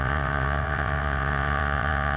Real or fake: fake